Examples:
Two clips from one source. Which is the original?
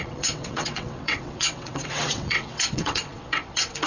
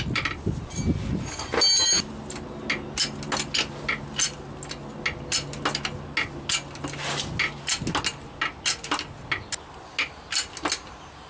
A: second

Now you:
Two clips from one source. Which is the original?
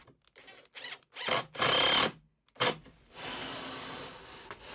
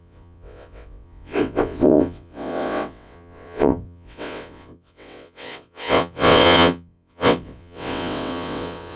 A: first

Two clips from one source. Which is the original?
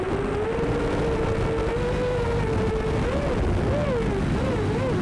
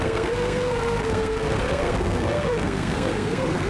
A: first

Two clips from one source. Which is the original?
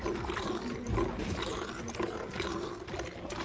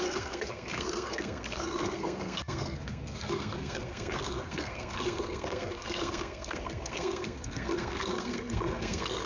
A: first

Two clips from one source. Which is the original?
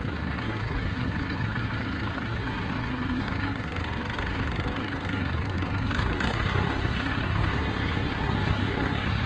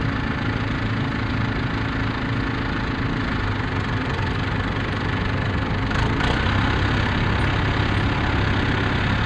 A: second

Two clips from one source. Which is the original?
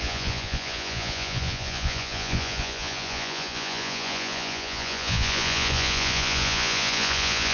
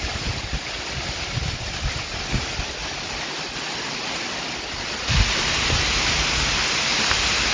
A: second